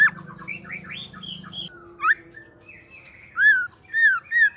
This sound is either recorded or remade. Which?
recorded